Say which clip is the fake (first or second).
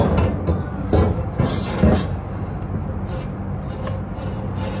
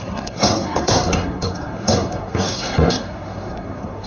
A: second